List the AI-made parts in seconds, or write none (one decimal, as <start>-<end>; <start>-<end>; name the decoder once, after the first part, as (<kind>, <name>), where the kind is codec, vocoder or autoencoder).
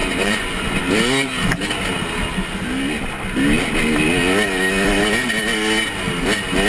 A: 0.0-0.8 (vocoder, Vocos)